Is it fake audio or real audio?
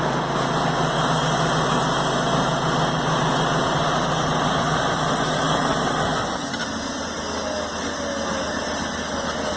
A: real